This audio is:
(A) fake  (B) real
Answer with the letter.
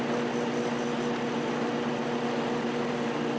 B